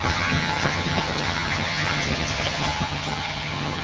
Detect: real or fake fake